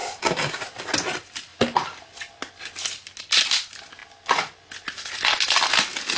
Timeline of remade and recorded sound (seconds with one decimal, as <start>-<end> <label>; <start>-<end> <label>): 0.0-0.6 remade; 0.6-6.2 recorded